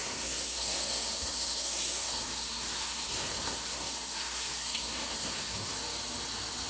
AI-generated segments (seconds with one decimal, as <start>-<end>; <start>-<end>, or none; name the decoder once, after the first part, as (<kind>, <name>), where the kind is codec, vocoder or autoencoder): 0.0-5.7 (codec, SNAC)